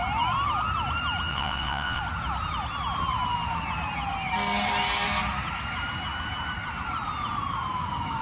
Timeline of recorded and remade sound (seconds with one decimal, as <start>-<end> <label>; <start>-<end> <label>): 0.0-1.3 recorded; 1.3-2.0 remade; 2.0-8.2 recorded